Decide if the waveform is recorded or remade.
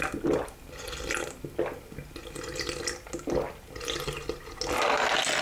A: recorded